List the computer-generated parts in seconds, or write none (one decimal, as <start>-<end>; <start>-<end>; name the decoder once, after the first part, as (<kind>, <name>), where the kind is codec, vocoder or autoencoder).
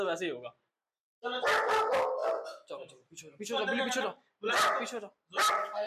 none